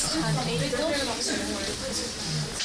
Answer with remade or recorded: recorded